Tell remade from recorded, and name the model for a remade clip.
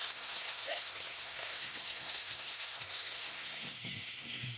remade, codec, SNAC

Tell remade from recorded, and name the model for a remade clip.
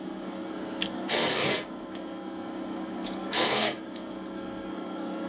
remade, codec, SNAC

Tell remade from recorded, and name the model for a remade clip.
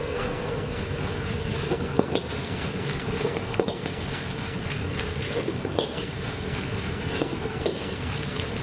remade, codec, SNAC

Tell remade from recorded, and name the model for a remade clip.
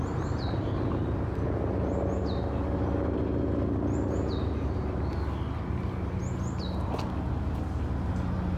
recorded